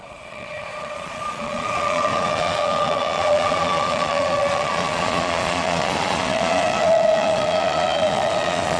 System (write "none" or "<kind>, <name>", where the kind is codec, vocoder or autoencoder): vocoder, Vocos